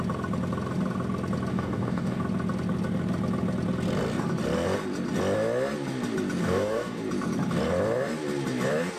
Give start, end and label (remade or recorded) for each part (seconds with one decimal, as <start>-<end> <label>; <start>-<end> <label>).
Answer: 0.0-1.5 recorded; 1.5-2.2 remade; 2.2-6.4 recorded; 6.4-7.0 remade; 7.0-9.0 recorded